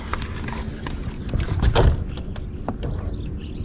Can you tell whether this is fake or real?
real